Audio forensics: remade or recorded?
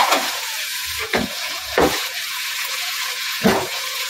remade